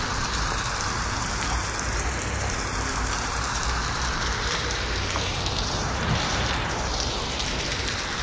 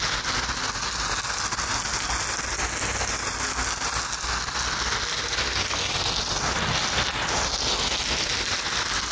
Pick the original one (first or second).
second